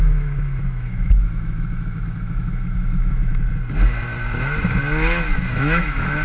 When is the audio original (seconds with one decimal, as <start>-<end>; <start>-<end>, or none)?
3.3-5.5